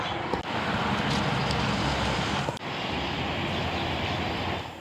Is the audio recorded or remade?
recorded